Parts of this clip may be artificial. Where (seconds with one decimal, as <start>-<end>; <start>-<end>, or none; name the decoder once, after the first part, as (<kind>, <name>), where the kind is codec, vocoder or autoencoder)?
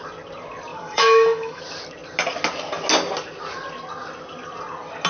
0.7-1.6 (autoencoder, DAC-VAE)